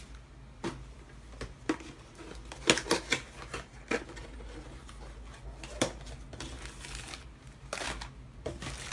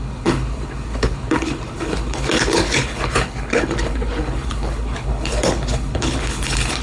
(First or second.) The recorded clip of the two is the first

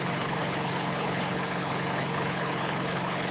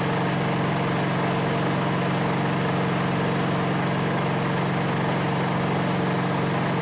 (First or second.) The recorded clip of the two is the second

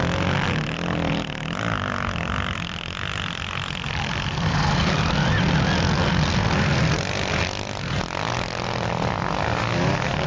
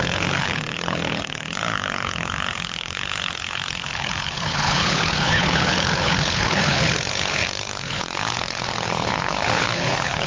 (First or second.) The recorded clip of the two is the first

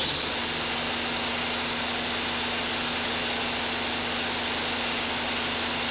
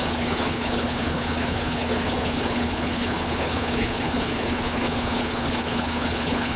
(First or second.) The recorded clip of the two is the first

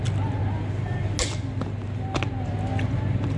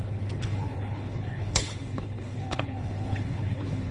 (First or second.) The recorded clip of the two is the first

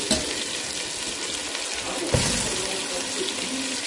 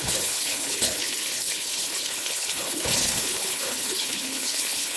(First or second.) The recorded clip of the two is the first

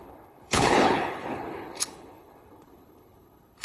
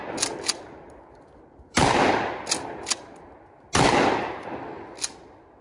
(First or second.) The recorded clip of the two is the second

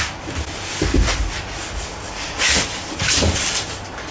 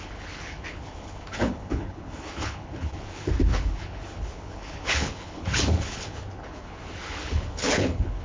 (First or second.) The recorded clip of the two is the first